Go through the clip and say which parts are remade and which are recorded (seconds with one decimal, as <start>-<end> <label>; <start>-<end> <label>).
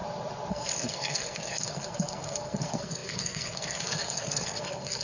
0.0-0.5 recorded; 0.5-5.0 remade